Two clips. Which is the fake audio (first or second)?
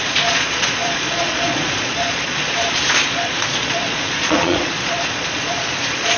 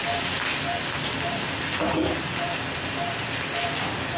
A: first